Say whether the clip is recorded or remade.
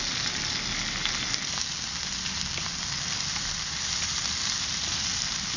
recorded